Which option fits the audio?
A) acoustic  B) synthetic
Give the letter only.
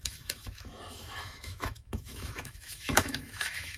B